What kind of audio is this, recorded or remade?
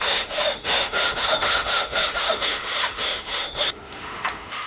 remade